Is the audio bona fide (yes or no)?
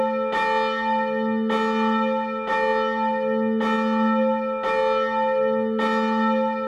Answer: yes